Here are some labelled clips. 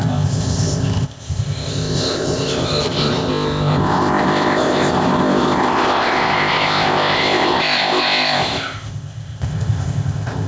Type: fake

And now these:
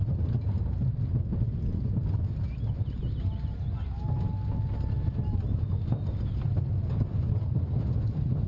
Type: real